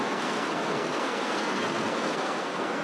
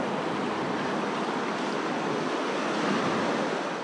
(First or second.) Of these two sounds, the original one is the second